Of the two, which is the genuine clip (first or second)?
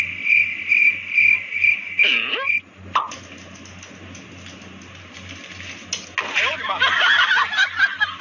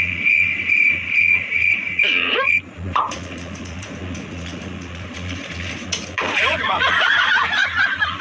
first